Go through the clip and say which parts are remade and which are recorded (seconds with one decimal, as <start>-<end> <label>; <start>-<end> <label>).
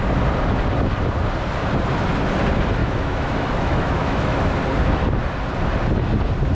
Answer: 0.0-2.8 recorded; 2.8-4.5 remade; 4.5-6.5 recorded